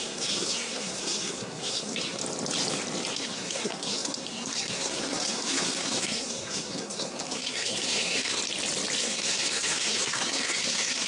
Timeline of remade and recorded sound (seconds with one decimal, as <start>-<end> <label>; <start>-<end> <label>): 0.0-2.2 remade; 2.2-3.1 recorded; 3.1-8.4 remade; 8.4-9.0 recorded; 9.0-11.1 remade

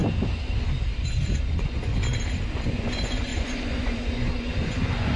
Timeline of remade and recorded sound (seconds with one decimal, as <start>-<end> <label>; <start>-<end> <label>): 0.0-1.2 recorded; 1.2-1.9 remade; 1.9-2.8 recorded; 2.8-5.2 remade

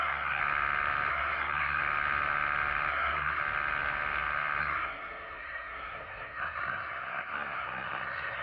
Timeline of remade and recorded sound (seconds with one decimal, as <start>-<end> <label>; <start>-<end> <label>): 0.0-0.4 remade; 0.4-1.1 recorded; 1.1-1.8 remade; 1.8-2.9 recorded; 2.9-3.4 remade; 3.4-4.6 recorded; 4.6-8.4 remade